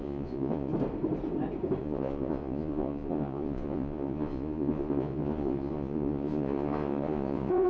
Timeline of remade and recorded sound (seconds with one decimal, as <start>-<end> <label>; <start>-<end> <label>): 0.0-0.7 remade; 0.7-1.8 recorded; 1.8-7.7 remade